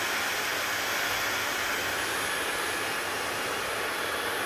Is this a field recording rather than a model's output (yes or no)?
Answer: yes